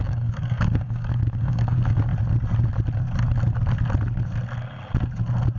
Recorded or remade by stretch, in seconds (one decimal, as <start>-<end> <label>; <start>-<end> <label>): 0.0-2.1 remade; 2.1-5.6 recorded